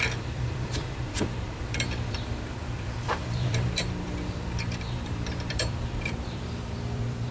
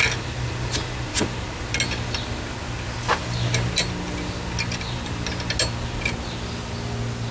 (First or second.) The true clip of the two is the second